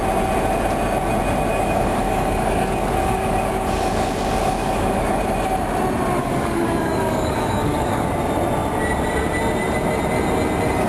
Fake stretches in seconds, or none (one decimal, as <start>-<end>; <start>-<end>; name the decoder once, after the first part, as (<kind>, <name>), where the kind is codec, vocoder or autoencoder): 1.5-5.2 (codec, DAC); 6.2-8.1